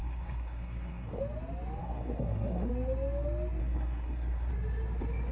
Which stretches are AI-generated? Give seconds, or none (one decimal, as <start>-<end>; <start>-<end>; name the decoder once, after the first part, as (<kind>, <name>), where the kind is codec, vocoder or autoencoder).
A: 0.0-1.2 (codec, SNAC); 1.8-2.7; 3.6-4.5